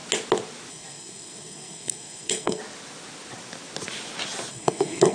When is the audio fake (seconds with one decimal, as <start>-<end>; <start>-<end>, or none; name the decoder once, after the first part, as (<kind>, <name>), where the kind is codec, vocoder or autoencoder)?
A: 0.7-2.6 (codec, SNAC); 4.5-5.1